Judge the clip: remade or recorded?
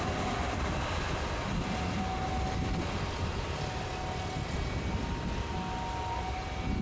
recorded